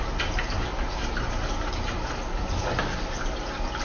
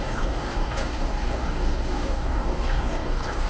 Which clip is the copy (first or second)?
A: second